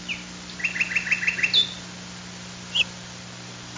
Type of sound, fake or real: real